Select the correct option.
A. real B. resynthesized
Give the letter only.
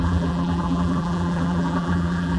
B